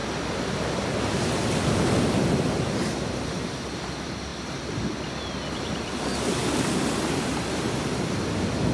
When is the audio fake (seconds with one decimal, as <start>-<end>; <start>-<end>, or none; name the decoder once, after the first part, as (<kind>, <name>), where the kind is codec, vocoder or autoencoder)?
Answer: none

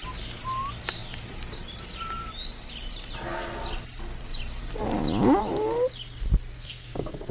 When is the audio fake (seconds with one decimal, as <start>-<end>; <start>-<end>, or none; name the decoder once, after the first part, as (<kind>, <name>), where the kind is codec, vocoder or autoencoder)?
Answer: 6.5-7.3 (codec, SNAC)

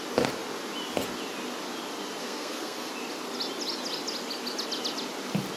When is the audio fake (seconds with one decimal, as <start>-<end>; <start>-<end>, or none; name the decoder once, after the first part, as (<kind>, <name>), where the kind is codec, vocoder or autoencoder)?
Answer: 2.2-2.9 (codec, SNAC)

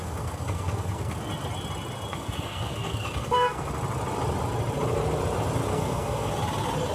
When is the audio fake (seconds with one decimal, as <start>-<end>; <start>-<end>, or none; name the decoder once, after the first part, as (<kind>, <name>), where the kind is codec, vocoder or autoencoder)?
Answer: 0.0-1.2 (codec, SNAC); 2.1-3.7; 5.7-6.3

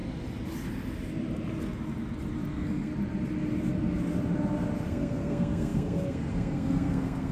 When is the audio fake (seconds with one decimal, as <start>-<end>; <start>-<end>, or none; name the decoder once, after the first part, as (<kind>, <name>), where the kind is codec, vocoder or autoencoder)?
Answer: 2.5-2.9 (codec, SNAC); 4.9-7.3

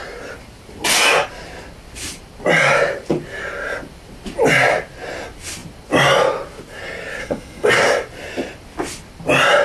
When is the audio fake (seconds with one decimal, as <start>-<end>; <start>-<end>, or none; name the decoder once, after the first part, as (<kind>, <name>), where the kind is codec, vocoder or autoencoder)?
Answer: 7.2-7.7 (codec, SNAC)

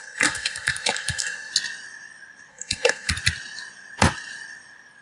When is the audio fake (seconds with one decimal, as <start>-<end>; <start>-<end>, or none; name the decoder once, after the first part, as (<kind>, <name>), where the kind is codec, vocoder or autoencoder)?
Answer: 0.0-1.5 (codec, SNAC); 2.5-3.1